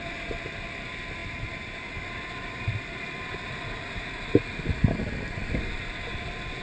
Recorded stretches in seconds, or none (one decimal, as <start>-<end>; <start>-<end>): 0.0-6.6